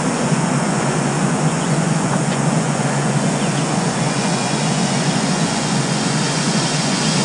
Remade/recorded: remade